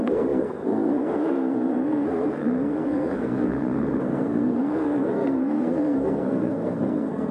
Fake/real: fake